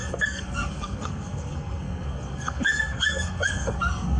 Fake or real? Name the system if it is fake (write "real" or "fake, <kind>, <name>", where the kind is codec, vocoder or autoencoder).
fake, codec, SNAC